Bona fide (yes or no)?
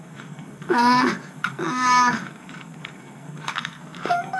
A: no